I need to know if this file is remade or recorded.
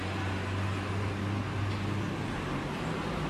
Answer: recorded